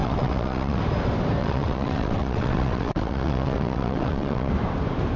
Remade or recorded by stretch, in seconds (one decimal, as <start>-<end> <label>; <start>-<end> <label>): 0.0-0.8 remade; 0.8-1.4 recorded; 1.4-4.5 remade; 4.5-5.2 recorded